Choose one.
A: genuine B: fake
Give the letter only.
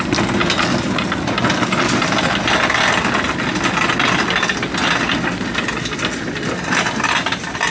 A